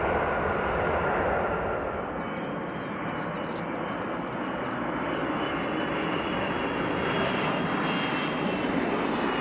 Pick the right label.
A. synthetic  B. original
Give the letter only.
B